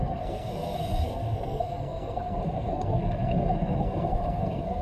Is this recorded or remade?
remade